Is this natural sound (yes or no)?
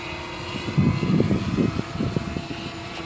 yes